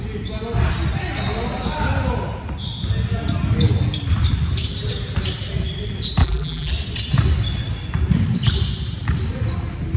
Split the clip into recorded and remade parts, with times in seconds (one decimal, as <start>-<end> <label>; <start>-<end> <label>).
0.0-6.2 recorded; 6.2-6.7 remade; 6.7-10.0 recorded